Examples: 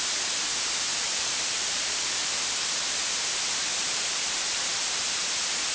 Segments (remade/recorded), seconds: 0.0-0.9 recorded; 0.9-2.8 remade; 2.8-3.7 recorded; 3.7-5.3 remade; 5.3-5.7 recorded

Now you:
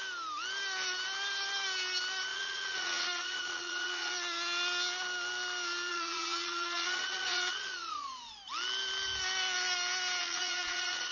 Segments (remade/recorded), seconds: 0.0-2.3 recorded; 2.3-4.1 remade; 4.1-5.9 recorded; 5.9-8.4 remade; 8.4-10.2 recorded; 10.2-11.1 remade